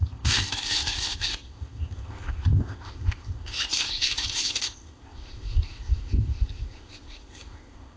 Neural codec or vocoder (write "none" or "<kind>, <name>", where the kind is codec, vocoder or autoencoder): codec, ZipCodec